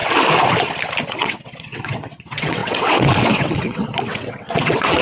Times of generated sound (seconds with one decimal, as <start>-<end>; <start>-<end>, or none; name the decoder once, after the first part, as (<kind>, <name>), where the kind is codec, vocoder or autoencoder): 1.1-5.0 (vocoder, WaveNeXt)